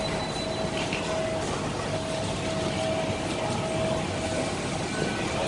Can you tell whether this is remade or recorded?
recorded